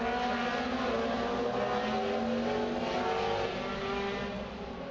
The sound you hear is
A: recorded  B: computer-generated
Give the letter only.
A